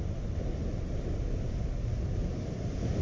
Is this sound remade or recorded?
recorded